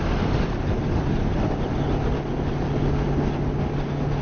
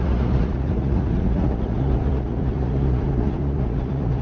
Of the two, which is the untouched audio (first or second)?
first